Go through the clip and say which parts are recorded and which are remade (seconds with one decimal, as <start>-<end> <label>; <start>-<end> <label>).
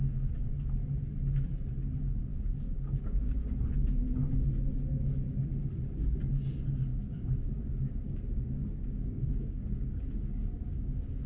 0.0-2.3 recorded; 2.3-3.4 remade; 3.4-6.9 recorded; 6.9-11.3 remade